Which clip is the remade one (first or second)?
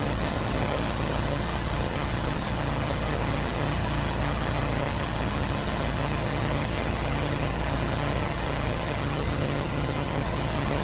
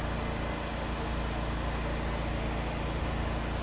first